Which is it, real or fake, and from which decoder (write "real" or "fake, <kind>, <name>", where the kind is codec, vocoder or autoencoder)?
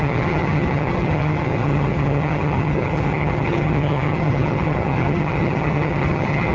fake, vocoder, HiFi-GAN